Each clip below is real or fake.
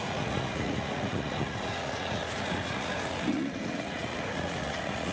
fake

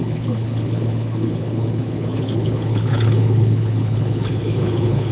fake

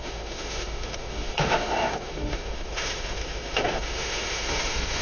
fake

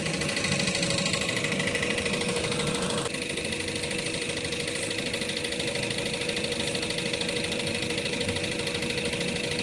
real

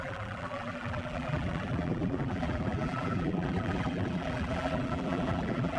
fake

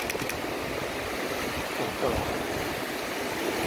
real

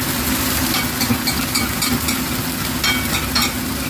real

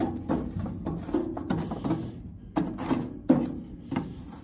real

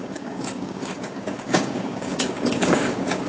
fake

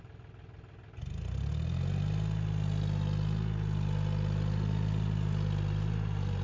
real